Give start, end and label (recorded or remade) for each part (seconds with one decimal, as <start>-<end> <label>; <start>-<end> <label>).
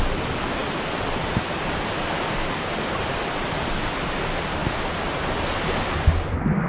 0.0-6.7 recorded